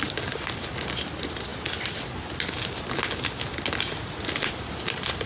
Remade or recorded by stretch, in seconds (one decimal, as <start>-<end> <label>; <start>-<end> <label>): 0.0-5.3 recorded